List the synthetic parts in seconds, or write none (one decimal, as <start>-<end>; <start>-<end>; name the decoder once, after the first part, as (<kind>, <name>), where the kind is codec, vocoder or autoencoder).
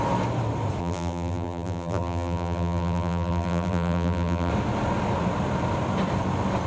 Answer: 0.8-4.5 (vocoder, BigVGAN v2)